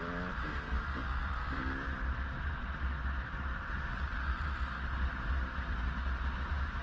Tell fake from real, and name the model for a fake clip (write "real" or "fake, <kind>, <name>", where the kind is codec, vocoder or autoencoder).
real